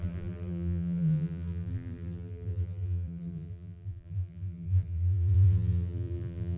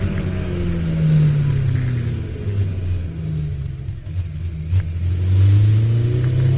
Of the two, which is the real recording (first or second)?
second